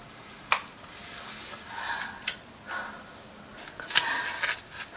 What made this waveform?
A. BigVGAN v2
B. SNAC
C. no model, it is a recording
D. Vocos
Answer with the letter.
C